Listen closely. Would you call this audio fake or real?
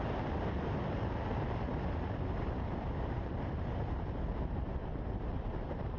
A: fake